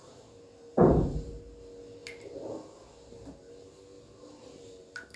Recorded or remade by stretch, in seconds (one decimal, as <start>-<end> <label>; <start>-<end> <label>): 0.0-0.8 recorded; 0.8-1.3 remade; 1.3-5.2 recorded